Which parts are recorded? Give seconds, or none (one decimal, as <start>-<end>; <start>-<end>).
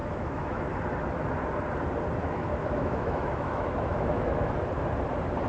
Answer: 0.6-2.2; 4.5-5.5